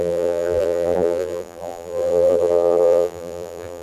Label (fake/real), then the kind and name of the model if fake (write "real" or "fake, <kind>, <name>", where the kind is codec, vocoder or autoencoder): fake, vocoder, BigVGAN v2